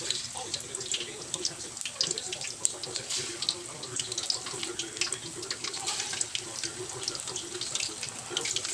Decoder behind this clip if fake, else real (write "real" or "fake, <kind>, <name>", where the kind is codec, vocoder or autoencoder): real